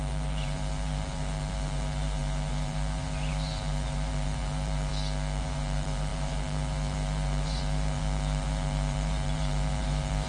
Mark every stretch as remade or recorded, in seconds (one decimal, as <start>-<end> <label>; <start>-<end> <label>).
0.0-4.9 remade; 4.9-5.4 recorded; 5.4-10.3 remade